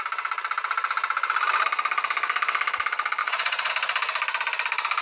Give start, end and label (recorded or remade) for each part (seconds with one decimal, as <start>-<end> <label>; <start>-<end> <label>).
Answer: 0.0-3.2 recorded; 3.2-3.7 remade; 3.7-5.0 recorded